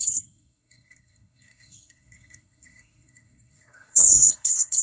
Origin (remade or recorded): remade